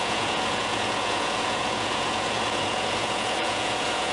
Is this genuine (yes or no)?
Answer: no